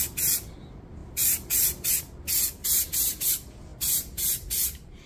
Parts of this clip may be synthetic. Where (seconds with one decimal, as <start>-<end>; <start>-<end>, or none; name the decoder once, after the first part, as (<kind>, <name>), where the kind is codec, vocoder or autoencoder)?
1.0-1.9 (vocoder, BigVGAN v2); 2.6-3.3